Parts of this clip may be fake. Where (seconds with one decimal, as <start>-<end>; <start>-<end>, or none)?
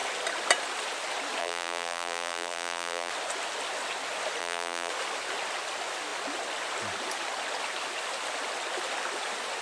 1.4-3.1; 4.4-4.9